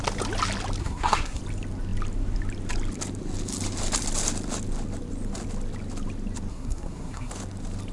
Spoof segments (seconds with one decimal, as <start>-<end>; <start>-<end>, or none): 0.8-1.4; 6.5-7.3

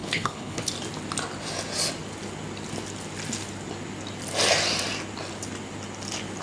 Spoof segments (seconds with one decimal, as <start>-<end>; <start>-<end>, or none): 0.0-0.7

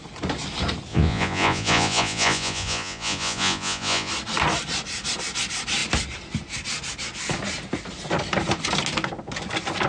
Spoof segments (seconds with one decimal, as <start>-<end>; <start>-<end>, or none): 0.9-4.1

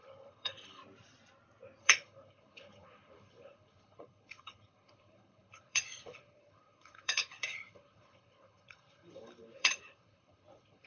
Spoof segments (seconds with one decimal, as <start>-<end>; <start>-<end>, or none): 0.0-0.8; 1.8-10.9

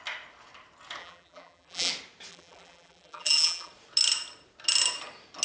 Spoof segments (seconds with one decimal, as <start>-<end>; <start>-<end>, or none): 1.0-1.9; 2.3-3.7

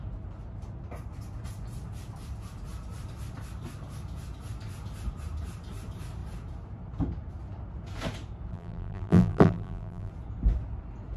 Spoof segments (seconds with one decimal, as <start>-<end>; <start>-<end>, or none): 8.5-10.1

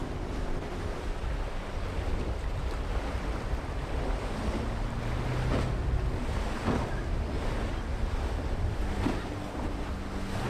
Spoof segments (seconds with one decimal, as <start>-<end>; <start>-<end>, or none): none